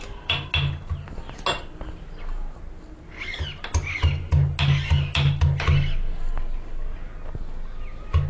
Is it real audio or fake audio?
real